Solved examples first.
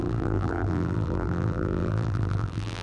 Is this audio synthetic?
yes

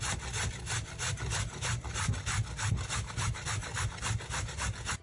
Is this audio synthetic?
no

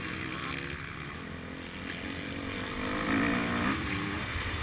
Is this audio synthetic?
no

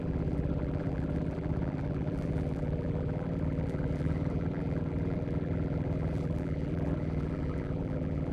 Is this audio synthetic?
yes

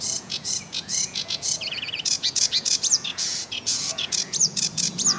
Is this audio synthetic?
yes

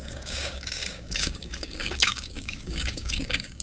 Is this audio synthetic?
yes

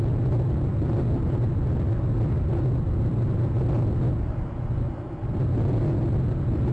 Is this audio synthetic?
no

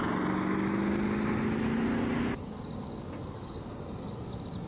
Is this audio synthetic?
no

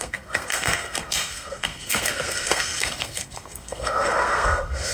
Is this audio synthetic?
yes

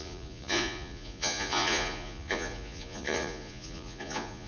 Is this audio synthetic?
yes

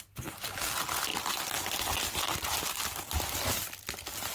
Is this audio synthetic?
no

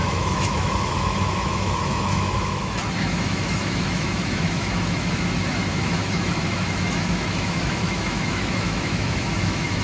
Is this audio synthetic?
yes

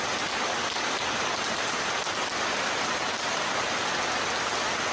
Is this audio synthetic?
no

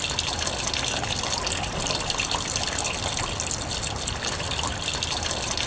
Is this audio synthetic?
no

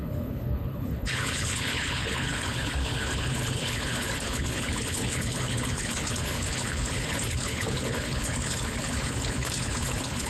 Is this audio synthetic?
yes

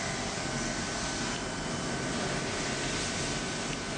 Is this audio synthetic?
no